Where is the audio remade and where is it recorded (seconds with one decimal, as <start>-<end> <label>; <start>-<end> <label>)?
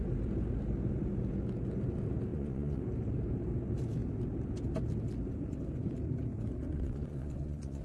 0.0-2.3 recorded; 2.3-2.8 remade; 2.8-6.7 recorded; 6.7-7.8 remade